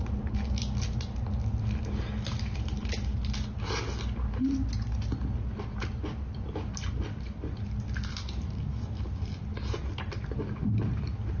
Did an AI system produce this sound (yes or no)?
no